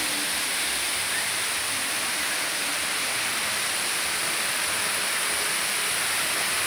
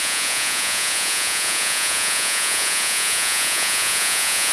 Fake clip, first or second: second